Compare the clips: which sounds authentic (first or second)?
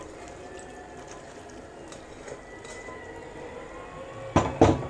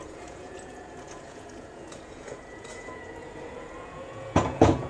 first